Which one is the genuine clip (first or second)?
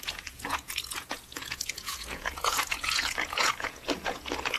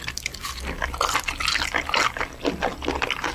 second